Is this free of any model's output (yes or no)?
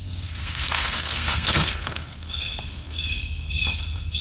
no